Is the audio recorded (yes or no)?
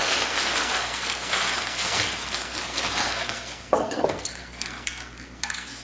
no